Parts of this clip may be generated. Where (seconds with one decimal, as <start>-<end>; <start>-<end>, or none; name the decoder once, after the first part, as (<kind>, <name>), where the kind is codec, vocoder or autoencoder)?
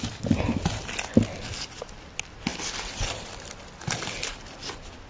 none